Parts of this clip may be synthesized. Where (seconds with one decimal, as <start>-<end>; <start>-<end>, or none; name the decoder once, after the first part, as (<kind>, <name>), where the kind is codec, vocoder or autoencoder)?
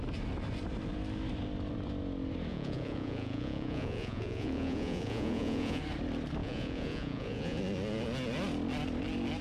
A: 2.5-5.8 (vocoder, Vocos); 6.4-7.6